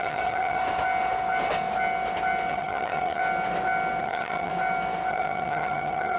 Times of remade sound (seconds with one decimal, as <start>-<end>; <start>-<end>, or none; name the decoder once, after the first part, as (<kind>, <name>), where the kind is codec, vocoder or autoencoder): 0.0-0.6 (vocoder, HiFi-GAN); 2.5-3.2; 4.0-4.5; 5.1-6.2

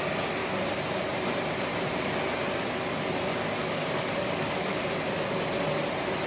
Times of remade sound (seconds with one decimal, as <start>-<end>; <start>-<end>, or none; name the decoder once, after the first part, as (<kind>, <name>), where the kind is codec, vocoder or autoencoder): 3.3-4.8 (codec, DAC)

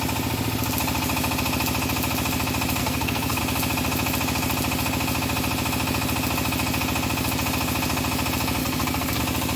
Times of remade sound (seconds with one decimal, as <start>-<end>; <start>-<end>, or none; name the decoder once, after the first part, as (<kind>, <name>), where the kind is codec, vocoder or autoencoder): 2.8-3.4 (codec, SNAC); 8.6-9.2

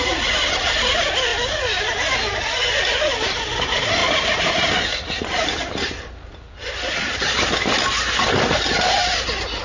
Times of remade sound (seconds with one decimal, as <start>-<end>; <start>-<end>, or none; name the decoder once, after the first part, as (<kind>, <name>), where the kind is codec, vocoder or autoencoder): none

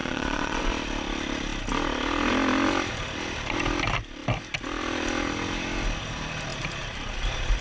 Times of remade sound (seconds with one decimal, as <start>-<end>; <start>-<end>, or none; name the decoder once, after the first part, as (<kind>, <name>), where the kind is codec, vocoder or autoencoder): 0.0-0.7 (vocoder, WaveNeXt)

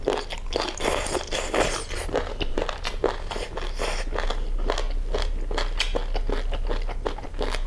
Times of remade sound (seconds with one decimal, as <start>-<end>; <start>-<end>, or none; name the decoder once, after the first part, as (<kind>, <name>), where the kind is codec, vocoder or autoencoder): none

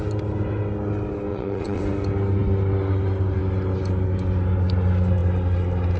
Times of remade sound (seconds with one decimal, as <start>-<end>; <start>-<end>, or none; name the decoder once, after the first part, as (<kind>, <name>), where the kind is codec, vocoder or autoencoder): 1.3-1.8 (vocoder, Vocos)

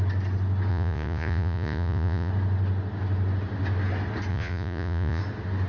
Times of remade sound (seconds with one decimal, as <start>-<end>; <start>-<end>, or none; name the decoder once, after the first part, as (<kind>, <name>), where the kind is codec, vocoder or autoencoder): 0.7-2.3 (vocoder, Vocos); 4.3-5.2